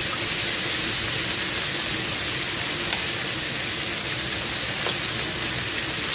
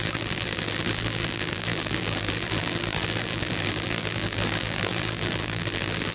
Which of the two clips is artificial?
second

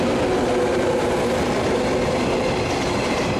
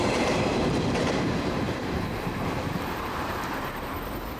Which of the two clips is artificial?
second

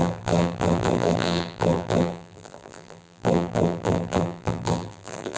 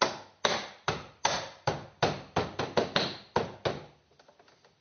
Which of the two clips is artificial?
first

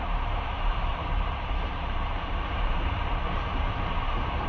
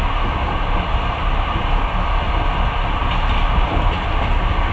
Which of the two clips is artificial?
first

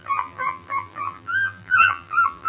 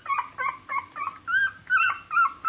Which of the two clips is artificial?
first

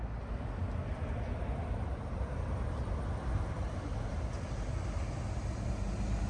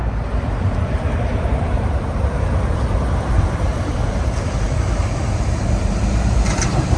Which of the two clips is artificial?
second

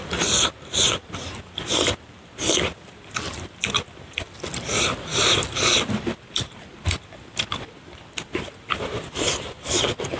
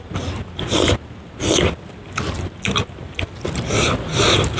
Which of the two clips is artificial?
first